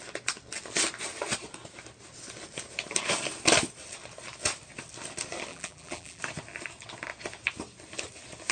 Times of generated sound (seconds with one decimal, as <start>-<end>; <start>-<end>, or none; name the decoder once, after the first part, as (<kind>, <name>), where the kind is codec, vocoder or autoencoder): 5.5-6.2 (vocoder, BigVGAN v2)